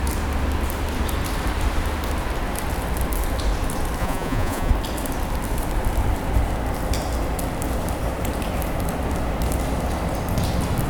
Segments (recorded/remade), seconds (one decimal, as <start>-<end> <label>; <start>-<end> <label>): 0.0-4.0 recorded; 4.0-4.7 remade; 4.7-10.9 recorded